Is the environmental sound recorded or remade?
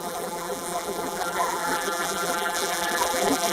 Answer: remade